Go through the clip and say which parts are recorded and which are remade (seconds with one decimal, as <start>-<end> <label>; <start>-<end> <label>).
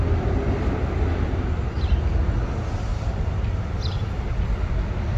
0.0-2.9 recorded; 2.9-4.8 remade; 4.8-5.2 recorded